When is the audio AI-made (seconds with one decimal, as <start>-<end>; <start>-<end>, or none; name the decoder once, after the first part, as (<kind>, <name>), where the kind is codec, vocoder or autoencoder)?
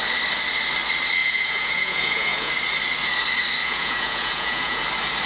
1.2-2.5 (vocoder, Vocos); 3.6-4.8